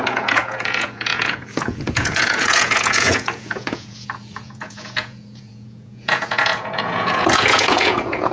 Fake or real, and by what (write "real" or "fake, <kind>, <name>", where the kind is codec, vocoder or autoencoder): fake, vocoder, Vocos